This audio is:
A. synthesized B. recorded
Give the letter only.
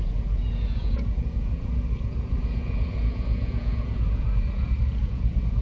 A